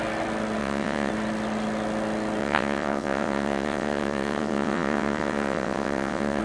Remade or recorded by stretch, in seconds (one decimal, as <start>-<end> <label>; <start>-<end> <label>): 0.0-0.6 recorded; 0.6-1.1 remade; 1.1-2.4 recorded; 2.4-6.4 remade